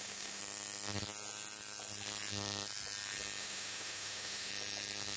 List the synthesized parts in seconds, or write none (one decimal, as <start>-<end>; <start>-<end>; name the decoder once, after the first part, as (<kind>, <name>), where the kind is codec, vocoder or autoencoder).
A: 0.0-0.4 (autoencoder, DAC-VAE); 3.4-4.5